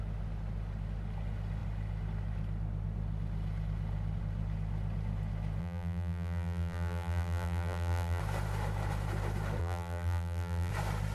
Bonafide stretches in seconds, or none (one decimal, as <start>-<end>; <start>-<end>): 0.0-5.6; 8.2-9.6; 10.7-11.1